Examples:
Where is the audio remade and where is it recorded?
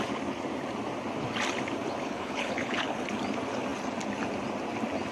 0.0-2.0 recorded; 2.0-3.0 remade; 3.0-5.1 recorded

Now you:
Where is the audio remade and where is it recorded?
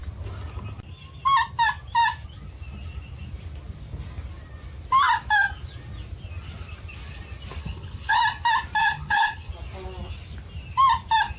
0.0-7.6 recorded; 7.6-8.2 remade; 8.2-8.8 recorded; 8.8-9.5 remade; 9.5-11.4 recorded